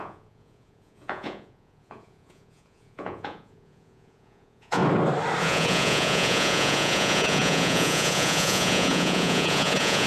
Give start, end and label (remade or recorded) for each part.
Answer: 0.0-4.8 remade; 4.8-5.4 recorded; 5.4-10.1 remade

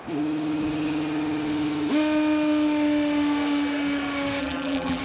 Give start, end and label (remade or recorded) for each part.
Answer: 0.0-4.4 recorded; 4.4-5.0 remade